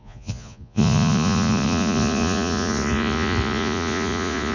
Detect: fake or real fake